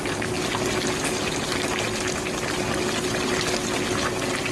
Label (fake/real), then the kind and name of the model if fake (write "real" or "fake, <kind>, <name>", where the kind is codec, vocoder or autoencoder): real